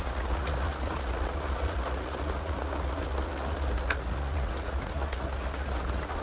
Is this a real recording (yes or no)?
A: no